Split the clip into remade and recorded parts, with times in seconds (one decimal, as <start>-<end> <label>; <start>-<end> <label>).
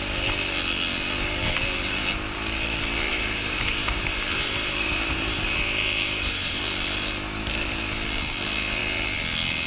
0.0-3.1 recorded; 3.1-6.6 remade; 6.6-9.7 recorded